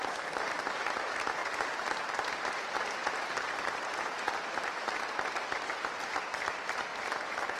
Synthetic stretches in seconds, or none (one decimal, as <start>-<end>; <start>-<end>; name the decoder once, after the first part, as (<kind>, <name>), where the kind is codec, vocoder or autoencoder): 1.4-2.0 (vocoder, BigVGAN v2); 3.0-4.3